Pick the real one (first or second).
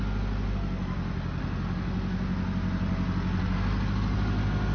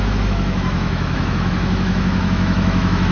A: first